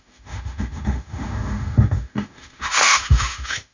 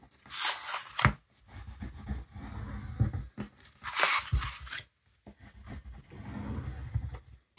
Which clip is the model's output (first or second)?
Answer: first